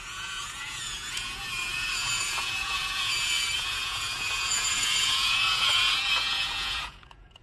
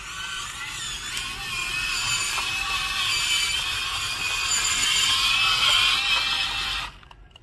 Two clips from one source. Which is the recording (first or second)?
second